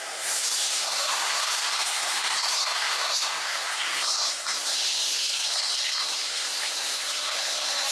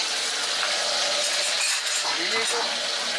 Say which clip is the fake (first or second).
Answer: first